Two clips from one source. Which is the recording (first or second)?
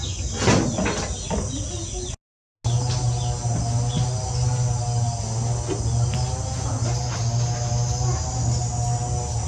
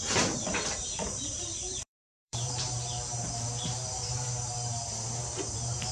first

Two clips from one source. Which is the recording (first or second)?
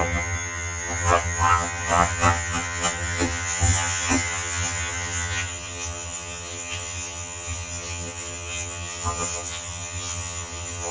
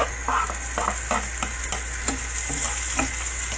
second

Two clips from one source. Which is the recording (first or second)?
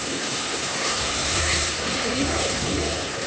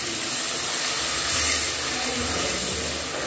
second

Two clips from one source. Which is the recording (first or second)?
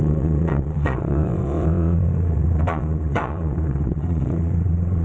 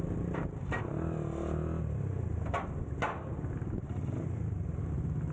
second